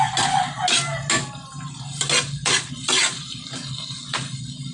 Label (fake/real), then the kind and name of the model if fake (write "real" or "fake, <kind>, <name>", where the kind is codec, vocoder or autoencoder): real